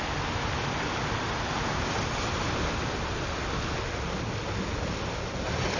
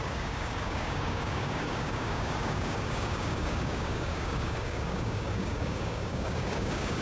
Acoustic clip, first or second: first